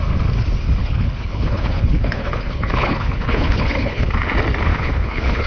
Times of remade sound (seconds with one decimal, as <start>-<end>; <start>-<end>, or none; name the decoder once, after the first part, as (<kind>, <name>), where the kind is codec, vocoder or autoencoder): 0.8-4.1 (codec, HILCodec); 4.7-5.5